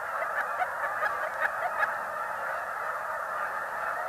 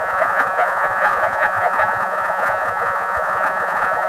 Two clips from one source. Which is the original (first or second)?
first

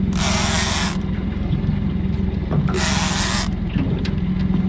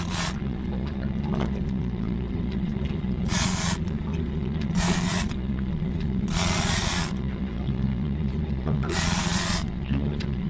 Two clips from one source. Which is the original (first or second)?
first